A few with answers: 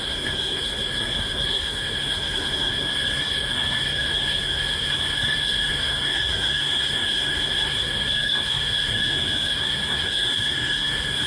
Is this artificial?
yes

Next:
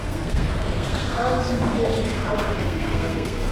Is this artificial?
yes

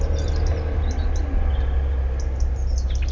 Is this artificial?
no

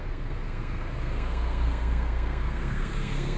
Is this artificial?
yes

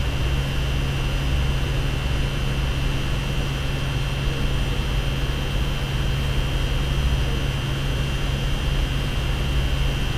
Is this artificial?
no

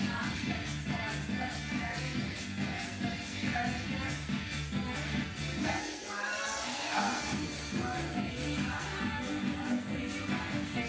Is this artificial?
yes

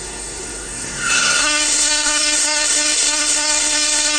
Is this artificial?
yes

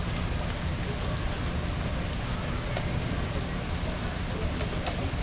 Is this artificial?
no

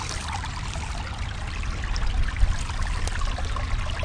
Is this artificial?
no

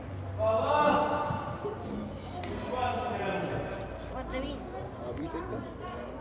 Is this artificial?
no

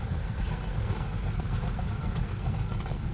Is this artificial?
yes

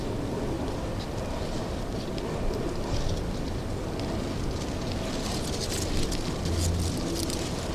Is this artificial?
no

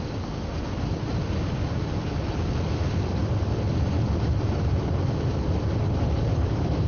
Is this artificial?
no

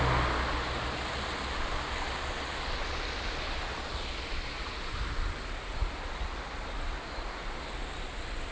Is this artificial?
no